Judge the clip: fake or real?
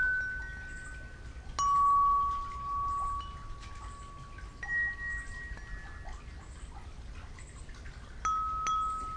real